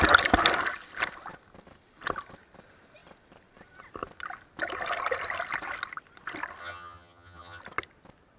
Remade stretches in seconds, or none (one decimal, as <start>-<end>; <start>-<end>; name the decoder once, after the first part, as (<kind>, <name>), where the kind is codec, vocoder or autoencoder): 6.6-7.6 (vocoder, HiFi-GAN)